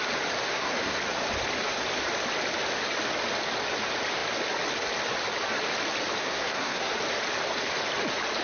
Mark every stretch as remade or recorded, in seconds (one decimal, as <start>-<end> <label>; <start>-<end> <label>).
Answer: 0.0-0.5 recorded; 0.5-1.0 remade; 1.0-6.2 recorded; 6.2-6.9 remade; 6.9-8.4 recorded